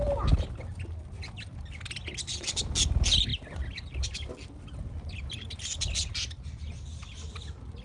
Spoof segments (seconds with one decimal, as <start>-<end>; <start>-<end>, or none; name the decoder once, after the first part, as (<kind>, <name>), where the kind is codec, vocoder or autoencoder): none